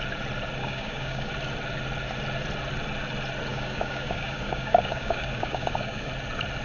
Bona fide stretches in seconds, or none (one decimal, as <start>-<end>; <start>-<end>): 0.0-0.6; 1.3-3.5; 6.1-6.6

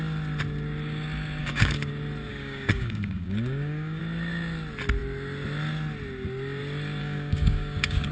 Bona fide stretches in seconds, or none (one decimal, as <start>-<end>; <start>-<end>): 0.0-1.4; 1.9-2.3; 4.0-7.0